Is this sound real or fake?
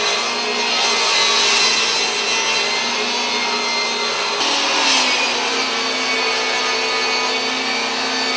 real